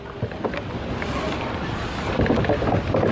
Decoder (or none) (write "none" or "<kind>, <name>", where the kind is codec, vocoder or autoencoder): none